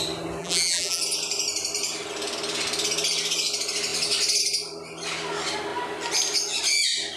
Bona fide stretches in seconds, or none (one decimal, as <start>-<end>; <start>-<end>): 0.0-0.4; 1.0-7.2